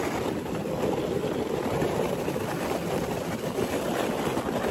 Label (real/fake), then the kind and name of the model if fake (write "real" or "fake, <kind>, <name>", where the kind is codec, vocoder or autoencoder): fake, vocoder, BigVGAN v2